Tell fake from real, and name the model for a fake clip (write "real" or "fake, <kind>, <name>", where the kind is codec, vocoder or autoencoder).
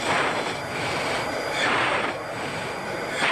fake, vocoder, BigVGAN v2